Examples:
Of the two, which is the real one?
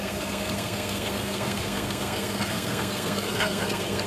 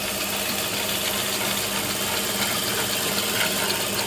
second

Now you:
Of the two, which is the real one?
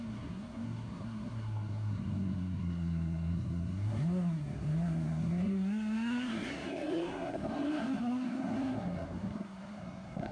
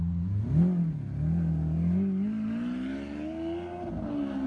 second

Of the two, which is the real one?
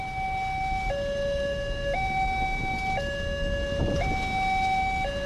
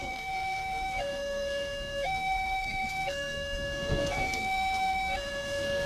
first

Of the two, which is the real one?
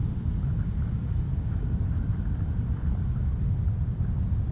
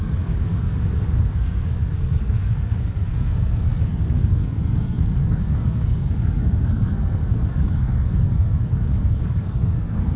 first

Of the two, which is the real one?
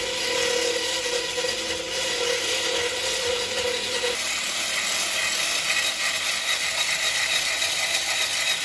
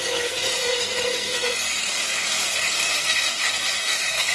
first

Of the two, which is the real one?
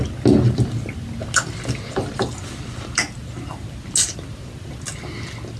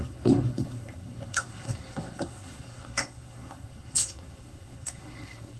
first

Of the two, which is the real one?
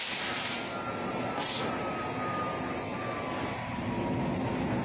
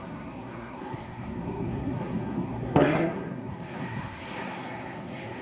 first